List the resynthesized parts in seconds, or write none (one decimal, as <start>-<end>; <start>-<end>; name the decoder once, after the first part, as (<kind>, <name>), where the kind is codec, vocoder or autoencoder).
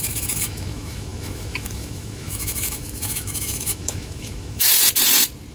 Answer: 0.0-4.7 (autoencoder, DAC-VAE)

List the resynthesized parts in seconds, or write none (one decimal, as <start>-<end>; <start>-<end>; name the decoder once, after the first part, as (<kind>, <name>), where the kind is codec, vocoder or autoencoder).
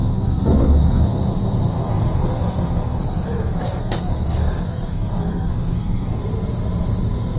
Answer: 0.0-1.2 (codec, SNAC); 1.8-6.2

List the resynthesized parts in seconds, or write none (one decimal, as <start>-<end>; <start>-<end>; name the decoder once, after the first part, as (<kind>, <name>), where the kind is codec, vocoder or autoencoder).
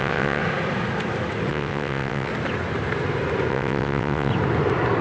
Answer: 0.0-0.4 (vocoder, WaveNeXt); 1.5-2.3; 3.5-4.3